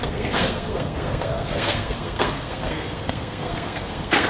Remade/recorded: remade